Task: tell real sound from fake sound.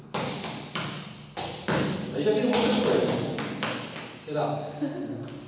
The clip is real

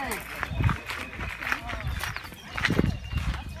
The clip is real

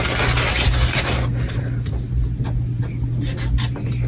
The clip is real